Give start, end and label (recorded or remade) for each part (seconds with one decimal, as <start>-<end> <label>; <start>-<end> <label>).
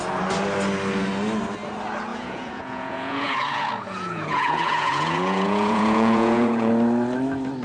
0.0-2.1 recorded; 2.1-6.7 remade; 6.7-7.6 recorded